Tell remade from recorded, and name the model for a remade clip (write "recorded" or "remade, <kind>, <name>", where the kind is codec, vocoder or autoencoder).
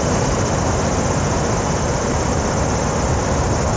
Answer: remade, vocoder, BigVGAN v2